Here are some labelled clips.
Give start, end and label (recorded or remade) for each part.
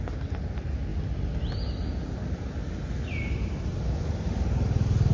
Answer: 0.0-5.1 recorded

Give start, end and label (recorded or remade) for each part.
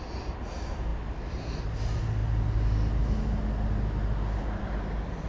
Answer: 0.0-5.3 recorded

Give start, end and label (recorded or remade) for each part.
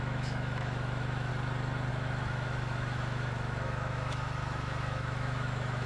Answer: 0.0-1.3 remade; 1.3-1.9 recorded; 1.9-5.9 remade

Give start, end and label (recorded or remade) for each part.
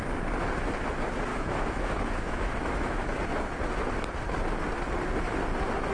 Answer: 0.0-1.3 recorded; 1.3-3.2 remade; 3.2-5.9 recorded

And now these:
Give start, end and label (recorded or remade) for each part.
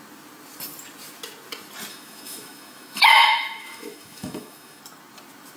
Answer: 0.0-1.9 recorded; 1.9-4.8 remade; 4.8-5.6 recorded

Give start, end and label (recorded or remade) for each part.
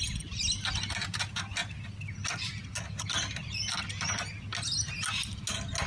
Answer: 0.0-5.9 recorded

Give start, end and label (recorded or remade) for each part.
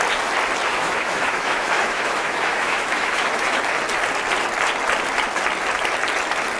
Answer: 0.0-0.7 recorded; 0.7-3.6 remade; 3.6-6.6 recorded